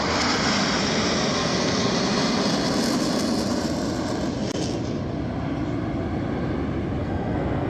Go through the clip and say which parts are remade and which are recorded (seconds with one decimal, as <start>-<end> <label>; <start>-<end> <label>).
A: 0.0-1.4 recorded; 1.4-1.9 remade; 1.9-7.0 recorded; 7.0-7.7 remade